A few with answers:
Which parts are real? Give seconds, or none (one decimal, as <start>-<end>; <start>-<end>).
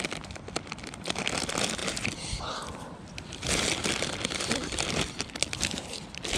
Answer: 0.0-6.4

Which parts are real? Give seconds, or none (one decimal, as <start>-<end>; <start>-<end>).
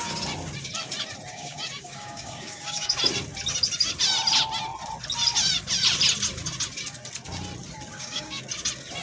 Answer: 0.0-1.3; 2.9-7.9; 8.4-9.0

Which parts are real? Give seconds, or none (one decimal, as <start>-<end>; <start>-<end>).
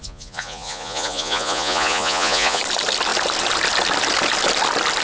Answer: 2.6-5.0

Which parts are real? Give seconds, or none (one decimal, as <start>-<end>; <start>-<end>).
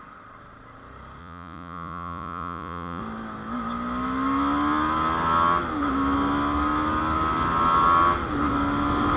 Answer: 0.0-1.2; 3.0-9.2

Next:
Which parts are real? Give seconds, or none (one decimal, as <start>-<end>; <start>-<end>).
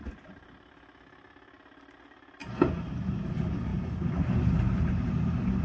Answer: 0.0-5.6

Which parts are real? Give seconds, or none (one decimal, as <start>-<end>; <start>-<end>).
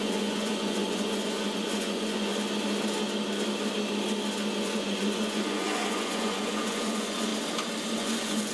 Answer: 2.3-4.6; 7.3-8.0